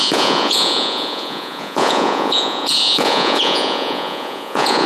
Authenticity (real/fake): fake